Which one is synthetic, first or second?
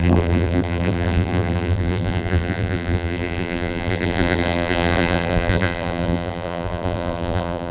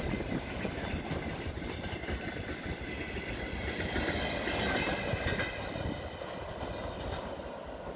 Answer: first